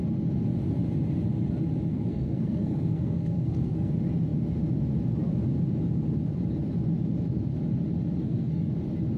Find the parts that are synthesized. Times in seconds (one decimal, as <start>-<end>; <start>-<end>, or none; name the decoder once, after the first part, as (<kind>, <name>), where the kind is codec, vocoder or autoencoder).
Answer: 1.9-3.9 (codec, SNAC); 8.2-8.7